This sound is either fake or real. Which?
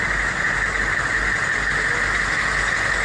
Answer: real